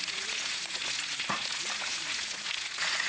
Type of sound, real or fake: fake